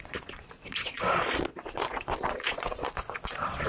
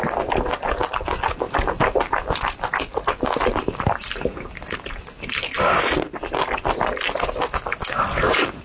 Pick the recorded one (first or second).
second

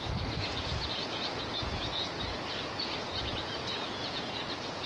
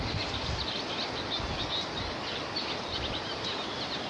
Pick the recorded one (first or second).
second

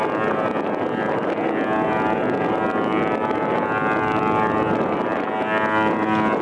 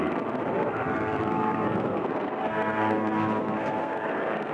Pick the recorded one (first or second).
first